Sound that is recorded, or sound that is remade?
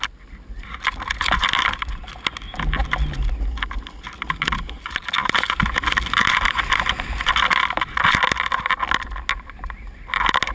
recorded